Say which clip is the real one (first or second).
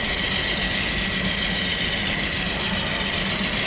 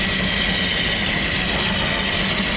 second